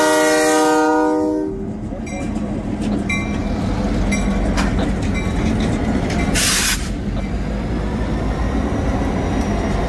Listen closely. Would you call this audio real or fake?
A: real